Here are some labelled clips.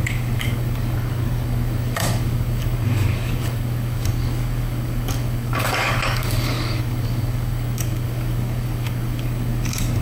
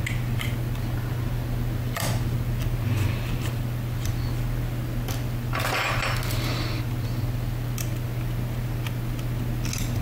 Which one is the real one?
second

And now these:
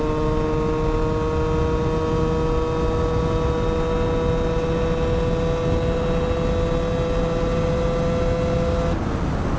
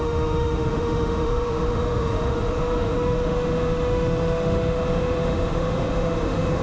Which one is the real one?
first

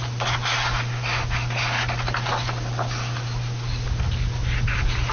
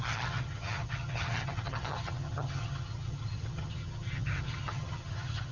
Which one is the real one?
first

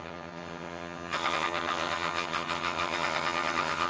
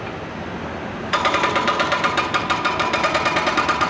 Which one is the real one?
second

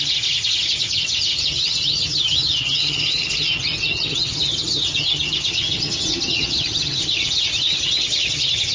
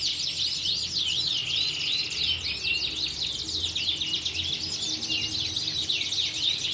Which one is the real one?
second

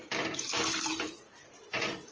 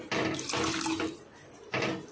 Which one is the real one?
second